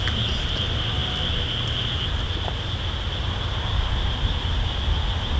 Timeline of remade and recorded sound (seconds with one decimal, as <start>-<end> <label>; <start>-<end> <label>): 0.0-5.4 recorded